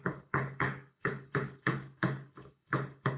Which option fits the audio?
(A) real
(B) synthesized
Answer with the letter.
B